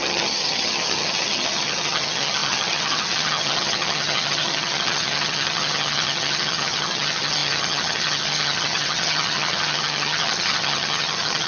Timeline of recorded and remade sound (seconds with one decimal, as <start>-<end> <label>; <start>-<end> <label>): 0.0-11.5 remade